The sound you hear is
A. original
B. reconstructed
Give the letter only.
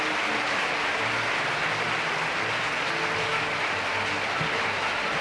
A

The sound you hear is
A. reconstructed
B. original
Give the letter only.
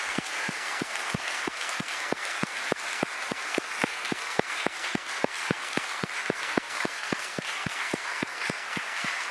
A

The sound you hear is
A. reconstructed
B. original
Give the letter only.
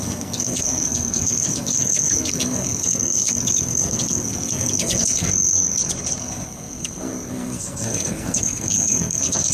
A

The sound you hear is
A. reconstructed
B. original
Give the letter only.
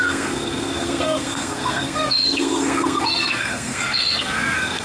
A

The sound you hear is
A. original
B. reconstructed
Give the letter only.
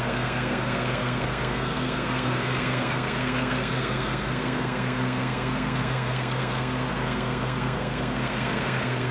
B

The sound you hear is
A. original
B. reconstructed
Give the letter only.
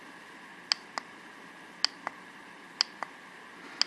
A